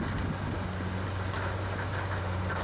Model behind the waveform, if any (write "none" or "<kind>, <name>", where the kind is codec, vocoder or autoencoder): none